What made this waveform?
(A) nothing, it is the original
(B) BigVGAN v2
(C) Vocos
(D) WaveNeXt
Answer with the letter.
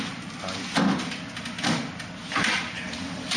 A